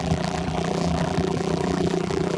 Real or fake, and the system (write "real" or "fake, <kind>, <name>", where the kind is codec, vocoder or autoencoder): fake, vocoder, BigVGAN v2